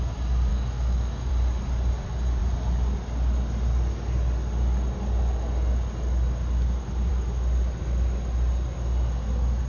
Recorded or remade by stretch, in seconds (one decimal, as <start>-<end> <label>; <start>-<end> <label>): 0.0-0.5 recorded; 0.5-1.3 remade; 1.3-9.7 recorded